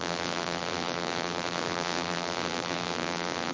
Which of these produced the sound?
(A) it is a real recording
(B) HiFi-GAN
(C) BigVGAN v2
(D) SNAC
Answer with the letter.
C